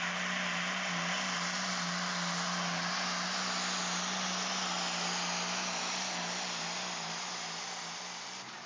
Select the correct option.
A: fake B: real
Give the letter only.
B